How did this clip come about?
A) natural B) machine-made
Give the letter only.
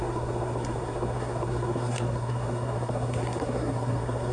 B